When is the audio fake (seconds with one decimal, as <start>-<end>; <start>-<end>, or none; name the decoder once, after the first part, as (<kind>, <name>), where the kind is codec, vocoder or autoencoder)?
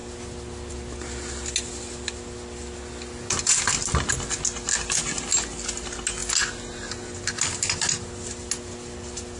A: none